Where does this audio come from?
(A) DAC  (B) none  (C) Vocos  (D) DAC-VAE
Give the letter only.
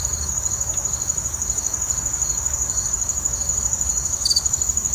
A